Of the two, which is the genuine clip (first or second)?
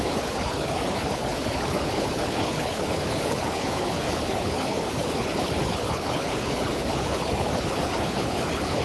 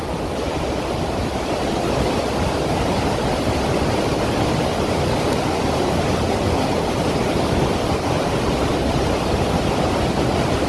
second